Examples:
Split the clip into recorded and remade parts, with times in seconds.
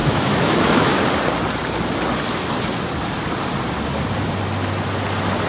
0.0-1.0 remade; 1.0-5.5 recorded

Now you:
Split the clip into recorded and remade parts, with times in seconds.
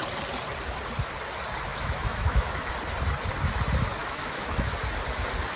0.0-1.7 recorded; 1.7-2.7 remade; 2.7-4.0 recorded; 4.0-4.7 remade; 4.7-5.6 recorded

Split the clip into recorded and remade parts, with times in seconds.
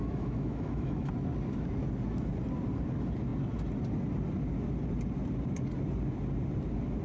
0.0-1.1 remade; 1.1-7.0 recorded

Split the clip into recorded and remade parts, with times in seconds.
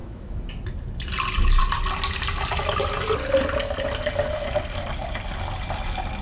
0.0-0.5 remade; 0.5-6.2 recorded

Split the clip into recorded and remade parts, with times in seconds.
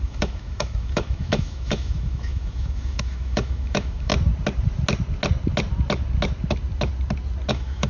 0.0-4.1 remade; 4.1-7.5 recorded; 7.5-7.9 remade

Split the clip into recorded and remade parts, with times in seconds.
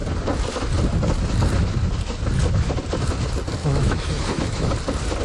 0.0-3.6 recorded; 3.6-4.7 remade; 4.7-5.2 recorded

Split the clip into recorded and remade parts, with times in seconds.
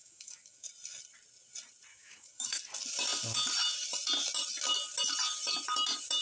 0.0-0.7 remade; 0.7-1.9 recorded; 1.9-2.6 remade; 2.6-6.2 recorded